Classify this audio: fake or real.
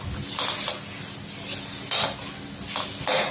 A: real